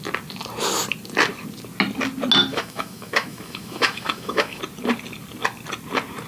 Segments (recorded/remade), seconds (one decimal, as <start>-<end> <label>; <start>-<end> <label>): 0.0-2.5 recorded; 2.5-4.6 remade; 4.6-6.3 recorded